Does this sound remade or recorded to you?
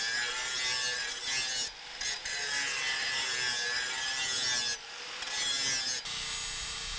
recorded